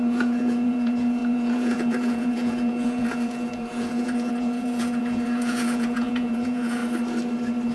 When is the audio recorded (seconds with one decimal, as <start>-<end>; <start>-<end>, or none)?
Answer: 6.8-7.7

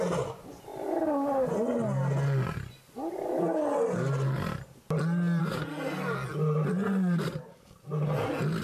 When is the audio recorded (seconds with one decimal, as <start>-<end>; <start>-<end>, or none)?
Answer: 0.0-8.6